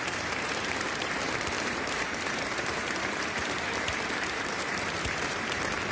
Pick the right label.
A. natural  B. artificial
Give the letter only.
B